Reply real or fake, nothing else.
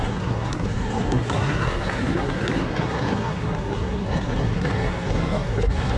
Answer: fake